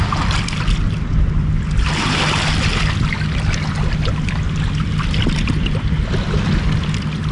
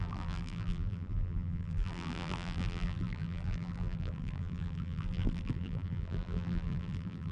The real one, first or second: first